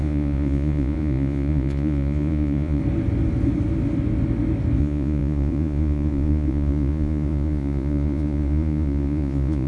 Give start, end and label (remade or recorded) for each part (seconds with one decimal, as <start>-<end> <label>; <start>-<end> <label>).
0.0-2.8 remade; 2.8-4.8 recorded; 4.8-9.7 remade